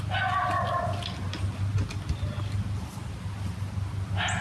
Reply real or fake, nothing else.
real